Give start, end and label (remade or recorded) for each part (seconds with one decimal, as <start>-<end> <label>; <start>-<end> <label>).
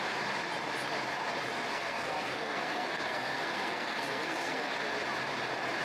0.0-1.7 recorded; 1.7-4.7 remade; 4.7-5.8 recorded